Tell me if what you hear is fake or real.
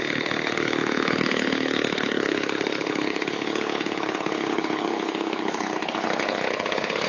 fake